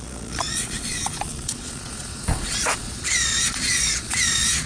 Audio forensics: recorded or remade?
remade